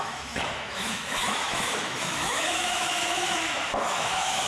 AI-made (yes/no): yes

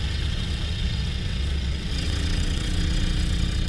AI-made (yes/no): yes